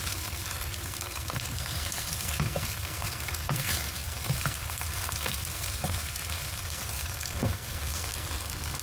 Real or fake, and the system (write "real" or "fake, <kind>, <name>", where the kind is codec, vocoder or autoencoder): fake, codec, SNAC